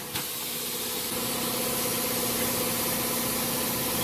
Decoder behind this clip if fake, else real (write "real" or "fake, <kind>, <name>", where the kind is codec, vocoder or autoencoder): real